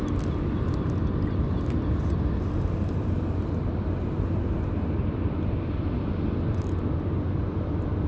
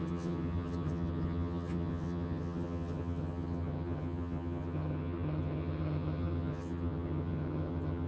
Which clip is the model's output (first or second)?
second